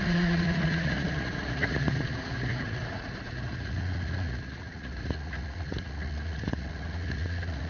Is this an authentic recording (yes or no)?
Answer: no